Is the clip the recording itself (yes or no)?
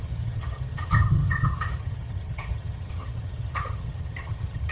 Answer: no